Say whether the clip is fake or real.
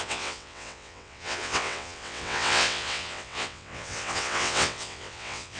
fake